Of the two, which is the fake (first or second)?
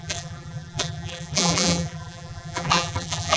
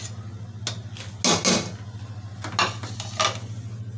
first